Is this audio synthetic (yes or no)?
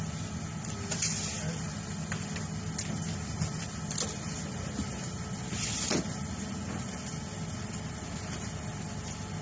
no